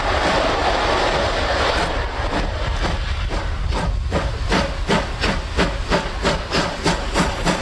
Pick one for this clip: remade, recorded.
recorded